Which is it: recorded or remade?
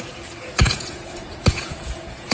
remade